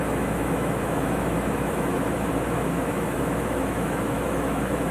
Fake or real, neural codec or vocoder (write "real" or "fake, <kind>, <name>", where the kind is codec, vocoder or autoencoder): fake, autoencoder, DAC-VAE